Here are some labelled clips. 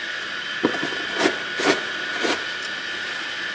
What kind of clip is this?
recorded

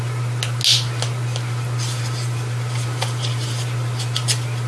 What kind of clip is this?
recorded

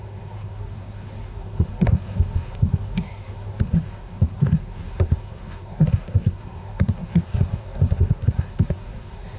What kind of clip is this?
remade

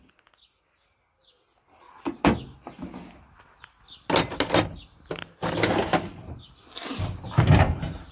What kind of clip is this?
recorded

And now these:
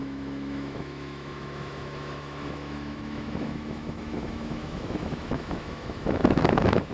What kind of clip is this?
remade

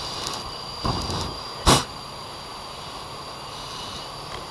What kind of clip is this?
remade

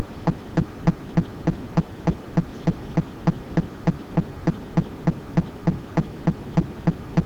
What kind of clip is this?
recorded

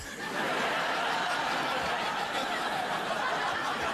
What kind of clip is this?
recorded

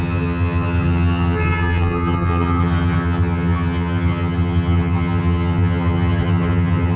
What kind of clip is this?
remade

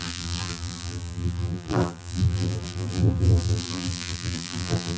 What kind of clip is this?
remade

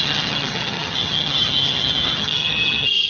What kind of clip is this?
remade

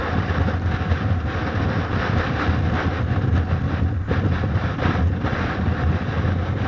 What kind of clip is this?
recorded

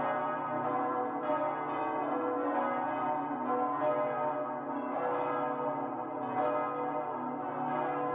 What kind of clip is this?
recorded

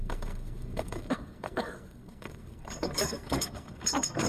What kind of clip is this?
remade